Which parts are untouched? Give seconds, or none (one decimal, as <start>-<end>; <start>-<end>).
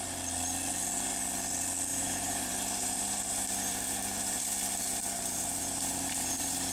0.0-1.9; 4.4-5.0